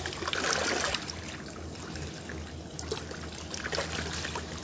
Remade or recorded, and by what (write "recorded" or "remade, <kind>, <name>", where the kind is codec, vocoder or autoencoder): recorded